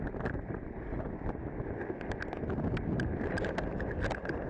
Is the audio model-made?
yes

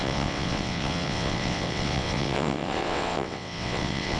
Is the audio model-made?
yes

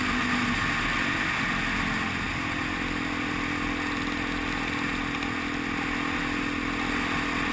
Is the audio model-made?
no